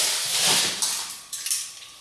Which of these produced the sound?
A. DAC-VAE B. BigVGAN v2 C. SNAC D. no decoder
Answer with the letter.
B